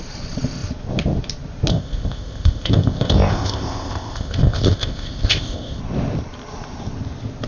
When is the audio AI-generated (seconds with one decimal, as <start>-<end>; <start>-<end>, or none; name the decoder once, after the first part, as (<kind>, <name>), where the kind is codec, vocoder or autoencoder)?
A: 1.7-5.8 (codec, ZipCodec)